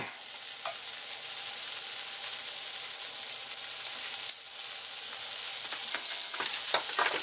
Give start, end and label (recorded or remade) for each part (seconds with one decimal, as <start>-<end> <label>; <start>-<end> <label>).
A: 0.0-5.9 recorded; 5.9-6.4 remade; 6.4-7.2 recorded